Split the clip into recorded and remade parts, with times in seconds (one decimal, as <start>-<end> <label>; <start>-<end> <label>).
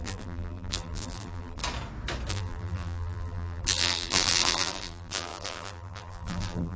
0.0-1.6 remade; 1.6-2.3 recorded; 2.3-6.8 remade